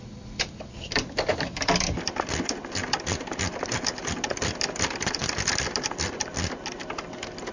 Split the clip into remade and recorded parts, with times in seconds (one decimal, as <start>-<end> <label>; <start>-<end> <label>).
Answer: 0.0-7.5 recorded